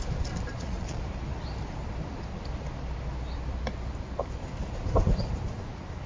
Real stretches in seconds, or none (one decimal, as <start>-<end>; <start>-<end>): 0.0-0.5; 1.0-6.1